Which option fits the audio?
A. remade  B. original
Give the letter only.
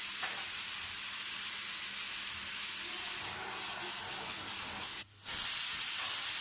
B